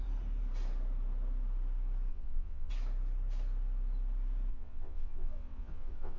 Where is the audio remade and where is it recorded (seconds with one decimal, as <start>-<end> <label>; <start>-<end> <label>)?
0.0-2.1 recorded; 2.1-2.7 remade; 2.7-4.5 recorded; 4.5-6.2 remade

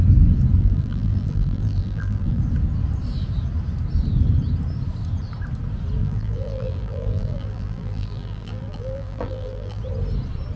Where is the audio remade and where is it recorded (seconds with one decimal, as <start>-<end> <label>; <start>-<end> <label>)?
0.0-0.6 recorded; 0.6-2.4 remade; 2.4-6.0 recorded; 6.0-9.8 remade; 9.8-10.6 recorded

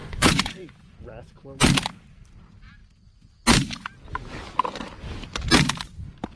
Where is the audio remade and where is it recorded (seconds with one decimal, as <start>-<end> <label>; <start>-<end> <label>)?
0.0-1.0 remade; 1.0-6.4 recorded

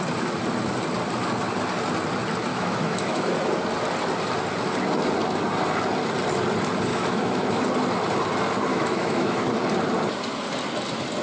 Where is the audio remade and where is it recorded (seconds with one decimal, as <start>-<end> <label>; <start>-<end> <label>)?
0.0-2.5 recorded; 2.5-3.3 remade; 3.3-6.9 recorded; 6.9-7.6 remade; 7.6-8.7 recorded; 8.7-9.5 remade; 9.5-11.2 recorded

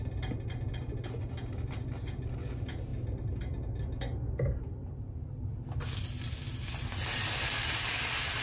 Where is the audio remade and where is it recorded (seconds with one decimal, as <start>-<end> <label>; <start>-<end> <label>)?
0.0-8.4 recorded

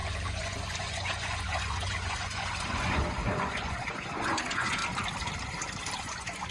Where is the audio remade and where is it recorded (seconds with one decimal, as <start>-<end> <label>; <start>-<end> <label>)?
0.0-4.8 remade; 4.8-6.0 recorded; 6.0-6.5 remade